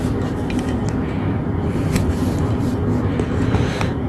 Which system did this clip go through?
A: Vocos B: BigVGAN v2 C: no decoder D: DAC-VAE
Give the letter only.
C